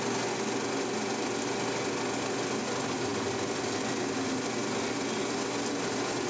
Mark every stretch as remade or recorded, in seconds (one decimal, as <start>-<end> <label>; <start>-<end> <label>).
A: 0.0-6.3 recorded